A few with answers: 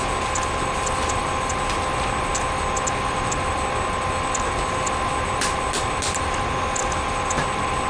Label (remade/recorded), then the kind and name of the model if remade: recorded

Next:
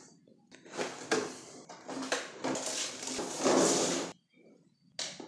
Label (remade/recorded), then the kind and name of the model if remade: recorded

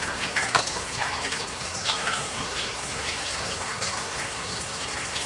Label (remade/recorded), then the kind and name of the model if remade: remade, codec, SNAC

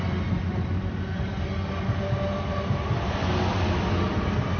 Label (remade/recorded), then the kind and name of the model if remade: recorded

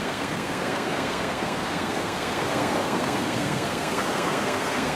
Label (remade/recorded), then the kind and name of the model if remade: remade, codec, SNAC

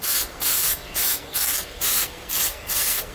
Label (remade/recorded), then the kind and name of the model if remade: remade, codec, SNAC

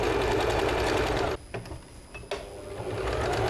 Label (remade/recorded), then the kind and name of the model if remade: recorded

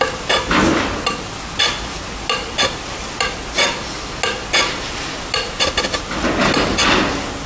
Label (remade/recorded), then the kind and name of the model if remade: recorded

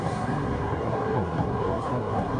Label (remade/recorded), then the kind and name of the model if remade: remade, codec, SNAC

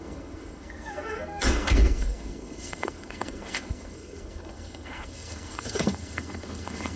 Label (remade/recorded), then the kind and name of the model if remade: remade, codec, SNAC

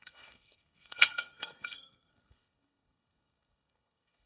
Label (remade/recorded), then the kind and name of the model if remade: remade, codec, SNAC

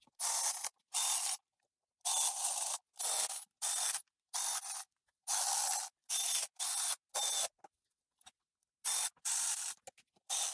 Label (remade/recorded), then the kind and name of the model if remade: recorded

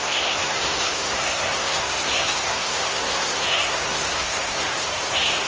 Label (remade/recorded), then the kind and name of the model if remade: remade, codec, SNAC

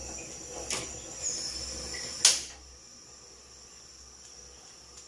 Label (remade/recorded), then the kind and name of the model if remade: recorded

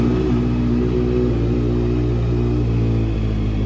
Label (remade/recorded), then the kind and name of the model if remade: recorded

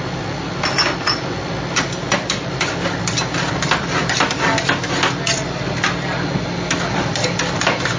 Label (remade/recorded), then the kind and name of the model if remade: recorded